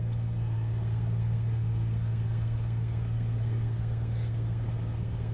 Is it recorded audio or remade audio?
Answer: remade